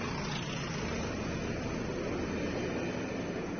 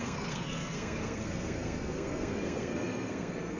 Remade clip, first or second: second